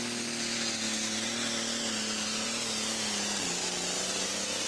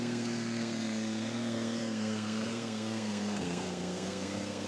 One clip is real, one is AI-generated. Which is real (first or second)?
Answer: first